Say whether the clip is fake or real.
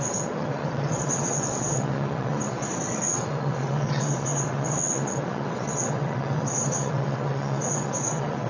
fake